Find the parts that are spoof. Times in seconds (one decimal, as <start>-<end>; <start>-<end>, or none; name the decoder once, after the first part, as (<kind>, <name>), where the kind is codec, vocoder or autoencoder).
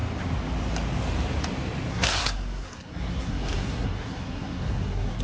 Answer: 1.9-5.2 (codec, SNAC)